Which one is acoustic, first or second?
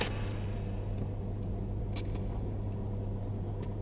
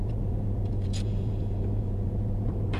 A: first